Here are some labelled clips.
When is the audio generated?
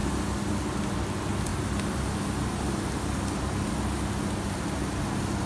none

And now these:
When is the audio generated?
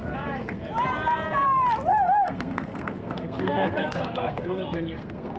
0.0-0.7 (codec, SNAC); 1.9-5.4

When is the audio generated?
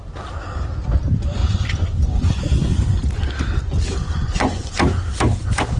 1.4-2.7 (vocoder, Vocos); 4.0-4.7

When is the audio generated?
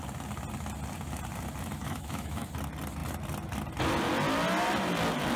1.8-2.5 (autoencoder, DAC-VAE)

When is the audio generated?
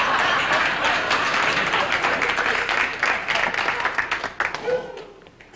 none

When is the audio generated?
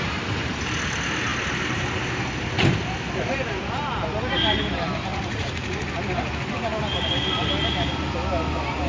5.1-5.9 (vocoder, Vocos)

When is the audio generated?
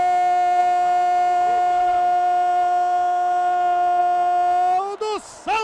none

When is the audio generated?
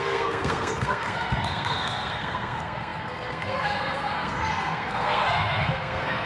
0.0-6.3 (codec, SNAC)